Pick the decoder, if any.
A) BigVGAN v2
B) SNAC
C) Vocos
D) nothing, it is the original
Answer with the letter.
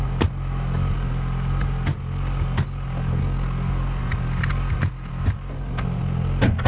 D